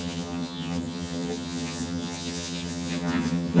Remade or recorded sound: remade